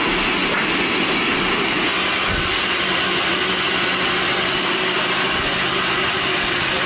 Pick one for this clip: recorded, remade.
recorded